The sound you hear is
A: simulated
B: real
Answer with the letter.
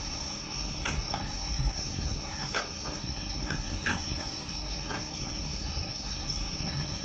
A